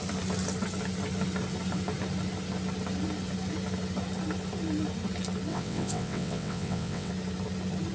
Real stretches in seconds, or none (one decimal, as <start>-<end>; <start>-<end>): 0.0-5.5; 7.1-7.9